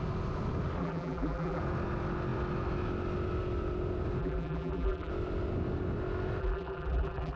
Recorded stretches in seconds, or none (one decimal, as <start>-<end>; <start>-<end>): 0.0-0.8; 1.6-4.2; 5.1-6.4